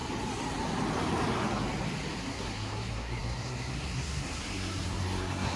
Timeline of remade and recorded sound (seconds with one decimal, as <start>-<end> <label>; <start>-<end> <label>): 0.0-2.1 recorded; 2.1-5.6 remade